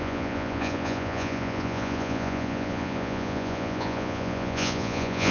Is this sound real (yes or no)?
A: no